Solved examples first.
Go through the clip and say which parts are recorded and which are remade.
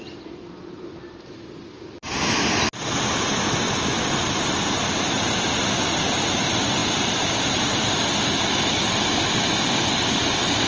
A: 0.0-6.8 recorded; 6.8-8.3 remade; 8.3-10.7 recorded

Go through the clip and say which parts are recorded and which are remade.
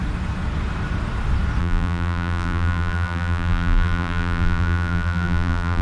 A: 0.0-1.6 recorded; 1.6-5.8 remade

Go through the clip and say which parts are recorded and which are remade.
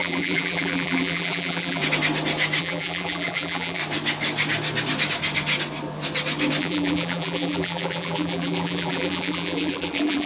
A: 0.0-1.8 remade; 1.8-2.6 recorded; 2.6-3.8 remade; 3.8-6.6 recorded; 6.6-10.3 remade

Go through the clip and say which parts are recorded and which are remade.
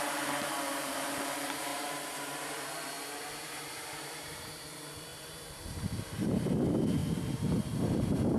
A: 0.0-8.4 remade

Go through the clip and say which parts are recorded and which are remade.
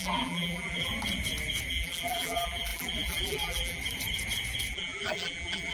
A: 0.0-0.9 remade; 0.9-1.7 recorded; 1.7-3.8 remade; 3.8-4.7 recorded; 4.7-5.7 remade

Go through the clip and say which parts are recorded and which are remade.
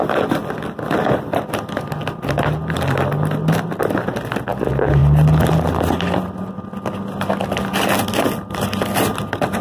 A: 0.0-9.6 recorded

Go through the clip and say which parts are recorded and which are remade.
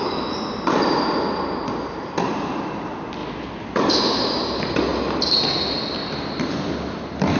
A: 0.0-3.2 recorded; 3.2-3.8 remade; 3.8-7.4 recorded